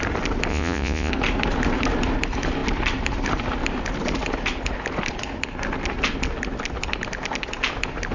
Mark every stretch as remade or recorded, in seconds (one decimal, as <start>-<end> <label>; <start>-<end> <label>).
0.0-0.5 recorded; 0.5-1.1 remade; 1.1-8.1 recorded